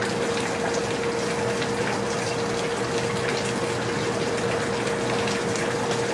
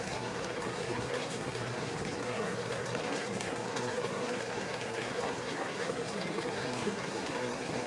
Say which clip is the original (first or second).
first